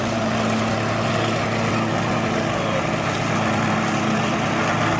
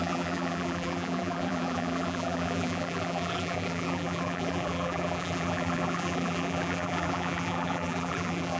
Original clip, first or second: first